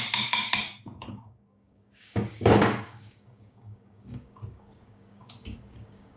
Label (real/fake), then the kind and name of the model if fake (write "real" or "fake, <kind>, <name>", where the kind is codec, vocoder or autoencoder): fake, codec, DAC